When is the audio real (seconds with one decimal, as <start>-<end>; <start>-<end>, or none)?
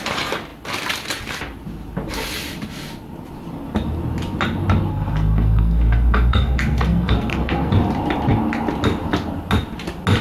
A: 0.0-4.9; 7.7-10.2